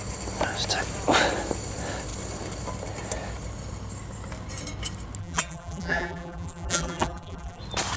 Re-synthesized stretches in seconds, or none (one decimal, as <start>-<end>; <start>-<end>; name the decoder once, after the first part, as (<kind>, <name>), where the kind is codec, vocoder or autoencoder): 5.2-7.6 (vocoder, BigVGAN v2)